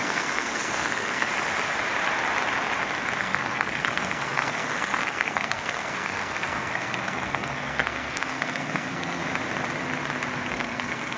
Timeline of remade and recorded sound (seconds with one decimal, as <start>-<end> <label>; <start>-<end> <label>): 0.0-1.3 remade; 1.3-3.2 recorded; 3.2-9.2 remade; 9.2-10.5 recorded; 10.5-11.2 remade